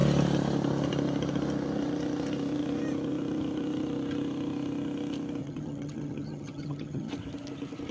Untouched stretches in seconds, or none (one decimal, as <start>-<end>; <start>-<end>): 0.0-5.4; 7.1-7.9